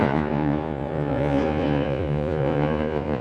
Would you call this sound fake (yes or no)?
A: yes